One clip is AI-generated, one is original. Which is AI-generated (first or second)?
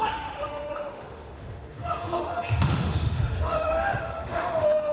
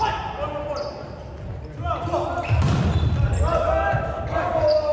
first